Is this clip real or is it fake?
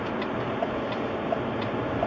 real